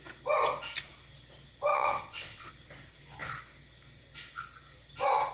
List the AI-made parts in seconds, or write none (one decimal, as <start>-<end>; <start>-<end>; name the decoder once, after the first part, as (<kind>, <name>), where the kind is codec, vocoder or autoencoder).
1.7-2.5 (vocoder, WaveNeXt)